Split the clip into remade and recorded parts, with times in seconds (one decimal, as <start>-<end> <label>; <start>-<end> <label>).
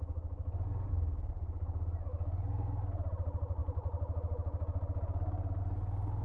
0.0-6.2 recorded